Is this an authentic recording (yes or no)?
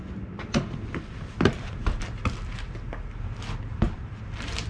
yes